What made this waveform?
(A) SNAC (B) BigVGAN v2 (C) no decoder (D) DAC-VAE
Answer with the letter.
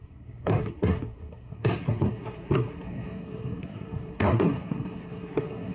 A